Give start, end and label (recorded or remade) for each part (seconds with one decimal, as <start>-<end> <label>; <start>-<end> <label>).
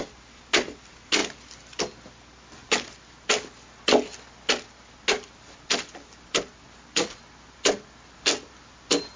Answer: 0.0-9.2 recorded